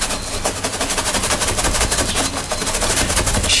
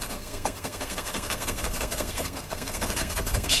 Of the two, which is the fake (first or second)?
second